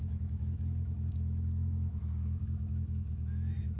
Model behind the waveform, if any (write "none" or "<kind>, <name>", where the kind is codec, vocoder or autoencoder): autoencoder, DAC-VAE